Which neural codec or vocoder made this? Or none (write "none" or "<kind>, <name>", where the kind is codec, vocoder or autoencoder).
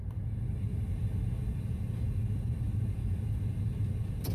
none